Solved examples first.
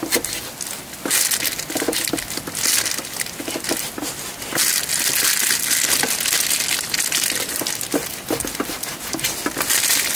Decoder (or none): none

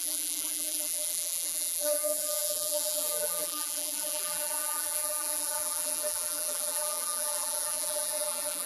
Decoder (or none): vocoder, BigVGAN v2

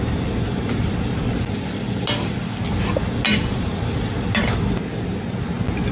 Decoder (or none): none